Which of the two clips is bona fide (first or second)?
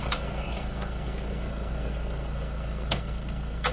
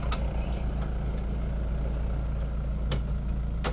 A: second